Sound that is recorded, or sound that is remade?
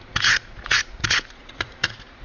remade